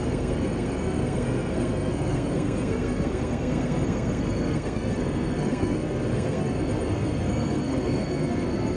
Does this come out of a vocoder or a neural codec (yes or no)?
yes